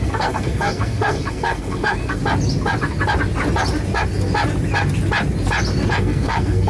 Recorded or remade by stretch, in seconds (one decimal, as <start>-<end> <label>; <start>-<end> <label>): 0.0-2.2 remade; 2.2-5.9 recorded; 5.9-6.7 remade